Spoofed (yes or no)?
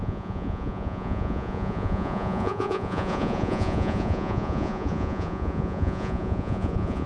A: yes